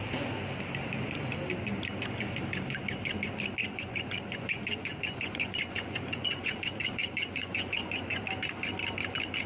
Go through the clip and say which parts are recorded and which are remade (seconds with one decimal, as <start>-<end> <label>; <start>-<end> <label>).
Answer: 0.0-3.6 recorded; 3.6-8.2 remade; 8.2-9.5 recorded

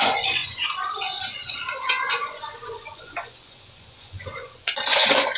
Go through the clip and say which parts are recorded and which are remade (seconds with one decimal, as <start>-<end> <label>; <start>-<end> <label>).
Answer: 0.0-5.4 remade

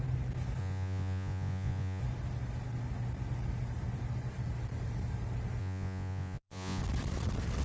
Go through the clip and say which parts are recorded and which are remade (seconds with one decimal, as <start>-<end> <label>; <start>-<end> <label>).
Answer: 0.0-0.6 recorded; 0.6-2.0 remade; 2.0-5.6 recorded; 5.6-6.8 remade; 6.8-7.6 recorded

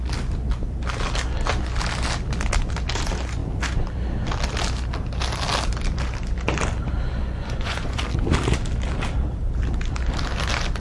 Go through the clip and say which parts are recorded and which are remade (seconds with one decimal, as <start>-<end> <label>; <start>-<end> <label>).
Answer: 0.0-7.2 recorded; 7.2-8.0 remade; 8.0-10.8 recorded

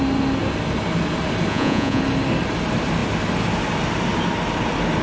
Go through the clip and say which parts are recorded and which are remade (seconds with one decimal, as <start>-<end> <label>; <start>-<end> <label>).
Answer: 0.0-1.5 recorded; 1.5-2.0 remade; 2.0-5.0 recorded

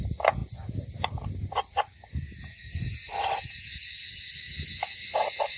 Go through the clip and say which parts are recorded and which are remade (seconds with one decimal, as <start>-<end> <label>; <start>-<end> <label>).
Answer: 0.0-5.6 recorded

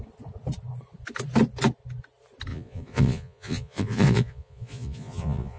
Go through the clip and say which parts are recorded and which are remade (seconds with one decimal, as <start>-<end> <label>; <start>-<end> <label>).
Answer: 0.0-2.5 recorded; 2.5-5.6 remade